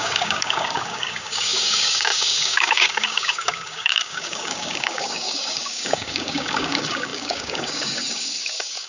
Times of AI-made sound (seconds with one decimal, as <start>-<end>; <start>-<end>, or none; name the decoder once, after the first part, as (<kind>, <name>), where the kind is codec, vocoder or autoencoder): 0.0-8.9 (codec, DAC)